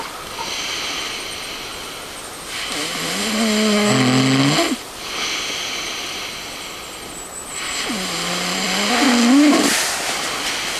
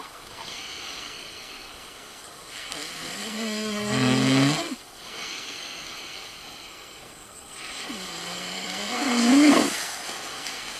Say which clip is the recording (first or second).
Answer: first